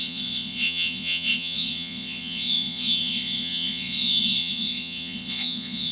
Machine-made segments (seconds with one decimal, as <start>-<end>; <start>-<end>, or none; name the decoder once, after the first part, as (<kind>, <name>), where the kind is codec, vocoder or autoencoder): 0.0-5.9 (vocoder, Vocos)